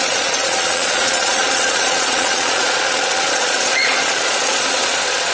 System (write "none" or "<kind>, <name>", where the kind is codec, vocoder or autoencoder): vocoder, Vocos